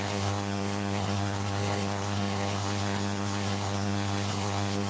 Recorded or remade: remade